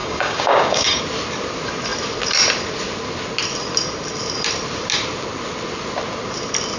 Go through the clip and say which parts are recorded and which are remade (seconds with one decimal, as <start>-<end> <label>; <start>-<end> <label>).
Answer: 0.0-1.0 remade; 1.0-6.8 recorded